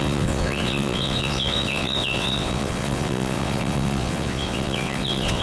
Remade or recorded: remade